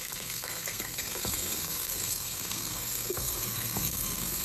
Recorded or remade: remade